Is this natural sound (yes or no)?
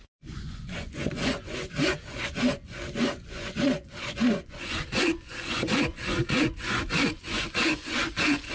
no